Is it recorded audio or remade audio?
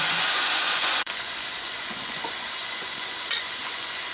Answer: remade